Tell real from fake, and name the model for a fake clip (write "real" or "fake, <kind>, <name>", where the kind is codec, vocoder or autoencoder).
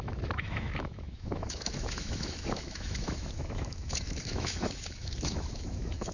fake, autoencoder, DAC-VAE